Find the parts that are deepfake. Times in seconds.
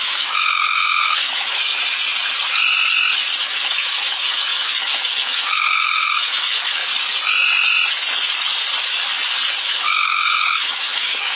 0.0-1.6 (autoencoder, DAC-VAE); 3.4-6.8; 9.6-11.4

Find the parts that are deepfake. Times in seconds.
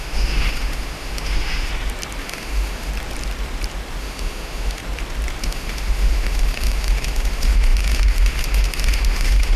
0.0-1.7 (autoencoder, DAC-VAE); 2.2-2.9; 4.0-4.8; 5.4-9.6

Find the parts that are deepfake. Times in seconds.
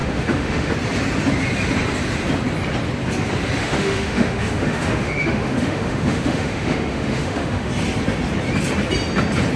0.0-0.7 (autoencoder, DAC-VAE); 3.6-7.7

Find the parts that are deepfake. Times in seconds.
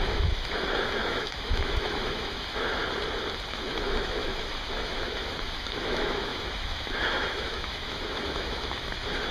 0.0-2.8 (autoencoder, DAC-VAE); 3.5-9.3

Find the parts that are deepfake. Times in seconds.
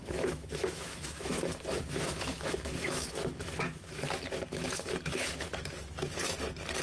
0.0-4.1 (autoencoder, DAC-VAE); 4.5-6.3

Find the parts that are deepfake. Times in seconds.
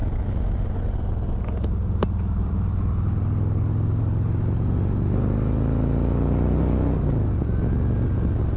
none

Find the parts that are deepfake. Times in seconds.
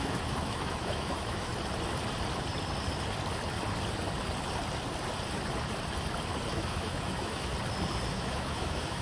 0.0-1.5 (autoencoder, DAC-VAE); 6.5-7.5; 8.1-9.0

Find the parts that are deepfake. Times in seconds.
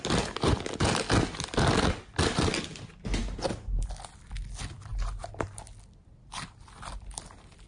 none